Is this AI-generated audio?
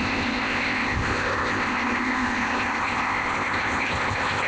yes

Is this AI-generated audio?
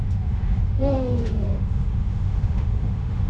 yes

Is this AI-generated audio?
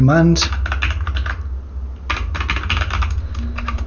no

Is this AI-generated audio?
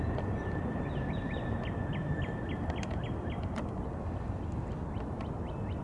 yes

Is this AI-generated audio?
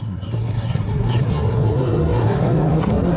yes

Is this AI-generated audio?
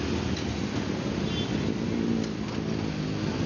no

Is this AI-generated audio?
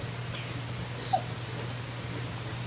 yes